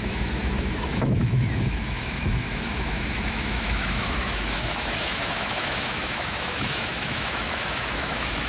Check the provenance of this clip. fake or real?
fake